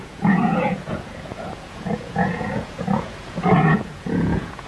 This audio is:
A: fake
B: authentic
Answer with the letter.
A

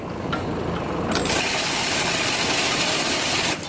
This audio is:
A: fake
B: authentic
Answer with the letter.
B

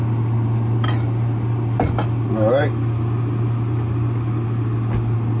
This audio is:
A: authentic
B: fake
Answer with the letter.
A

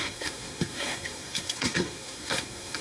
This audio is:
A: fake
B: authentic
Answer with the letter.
A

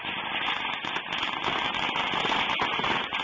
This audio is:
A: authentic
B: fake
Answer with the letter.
A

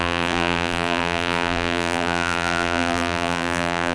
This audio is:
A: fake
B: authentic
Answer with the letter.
A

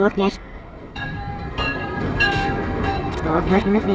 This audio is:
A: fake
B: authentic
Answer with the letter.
A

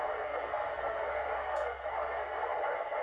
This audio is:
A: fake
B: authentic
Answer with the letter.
A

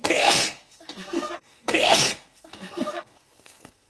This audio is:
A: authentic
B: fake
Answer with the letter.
B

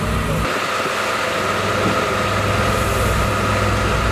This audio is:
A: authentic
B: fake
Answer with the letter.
A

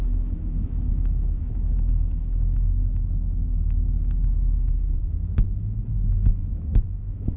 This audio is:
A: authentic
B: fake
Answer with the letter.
B